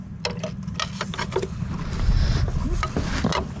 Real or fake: real